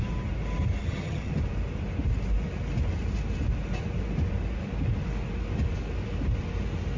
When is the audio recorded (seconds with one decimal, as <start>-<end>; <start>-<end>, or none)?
0.0-0.8; 1.3-7.0